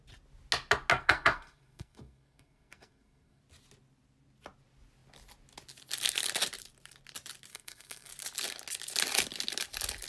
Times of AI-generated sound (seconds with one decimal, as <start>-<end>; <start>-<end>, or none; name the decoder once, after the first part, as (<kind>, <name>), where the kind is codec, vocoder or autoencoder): 0.9-3.4 (codec, SNAC); 7.5-8.1